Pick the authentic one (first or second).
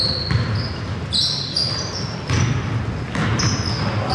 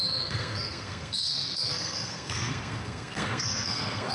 first